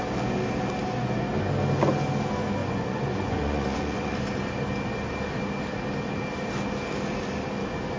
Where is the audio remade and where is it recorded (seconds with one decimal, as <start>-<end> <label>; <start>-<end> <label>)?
0.0-2.6 recorded; 2.6-4.2 remade; 4.2-8.0 recorded